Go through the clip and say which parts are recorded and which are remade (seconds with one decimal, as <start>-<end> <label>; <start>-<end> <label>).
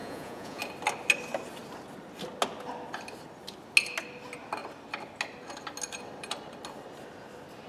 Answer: 0.0-0.6 remade; 0.6-7.7 recorded